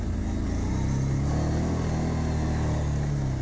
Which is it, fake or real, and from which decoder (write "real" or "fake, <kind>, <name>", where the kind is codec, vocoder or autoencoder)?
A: real